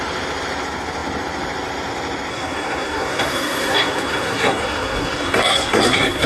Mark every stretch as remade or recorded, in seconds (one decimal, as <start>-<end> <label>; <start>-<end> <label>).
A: 0.0-2.3 recorded; 2.3-6.3 remade